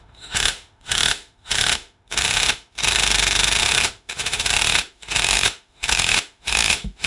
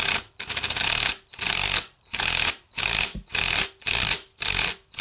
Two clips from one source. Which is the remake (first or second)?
first